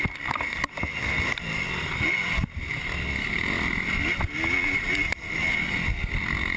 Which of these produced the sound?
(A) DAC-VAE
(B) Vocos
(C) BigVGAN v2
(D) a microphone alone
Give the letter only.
D